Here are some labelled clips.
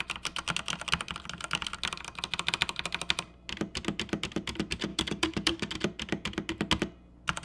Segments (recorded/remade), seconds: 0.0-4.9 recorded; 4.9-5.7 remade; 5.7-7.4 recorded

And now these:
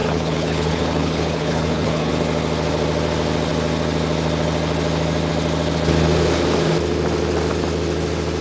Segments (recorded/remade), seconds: 0.0-2.1 remade; 2.1-8.4 recorded

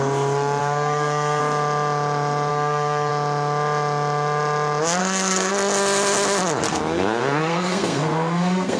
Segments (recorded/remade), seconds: 0.0-0.6 recorded; 0.6-1.4 remade; 1.4-2.5 recorded; 2.5-3.1 remade; 3.1-5.0 recorded; 5.0-5.5 remade; 5.5-6.7 recorded; 6.7-8.8 remade

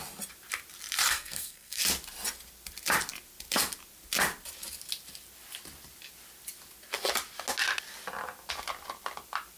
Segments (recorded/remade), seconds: 0.0-1.1 recorded; 1.1-1.8 remade; 1.8-9.6 recorded